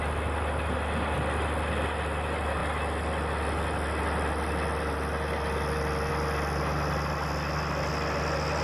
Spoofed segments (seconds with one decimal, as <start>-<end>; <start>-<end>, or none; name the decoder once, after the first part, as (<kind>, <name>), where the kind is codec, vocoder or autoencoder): none